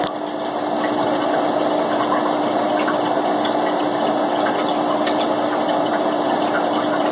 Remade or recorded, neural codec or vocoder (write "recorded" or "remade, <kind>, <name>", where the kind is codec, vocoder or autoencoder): recorded